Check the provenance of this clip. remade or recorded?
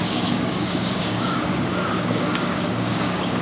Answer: remade